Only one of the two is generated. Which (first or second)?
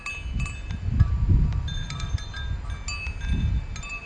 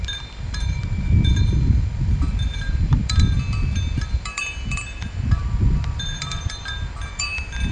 second